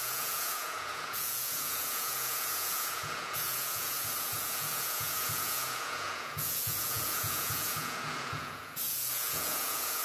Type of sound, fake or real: fake